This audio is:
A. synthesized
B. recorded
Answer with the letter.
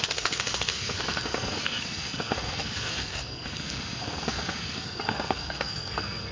A